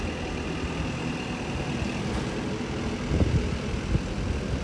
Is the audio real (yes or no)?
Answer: yes